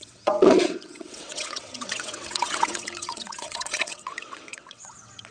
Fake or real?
fake